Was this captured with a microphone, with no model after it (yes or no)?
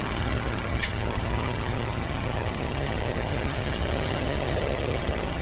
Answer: no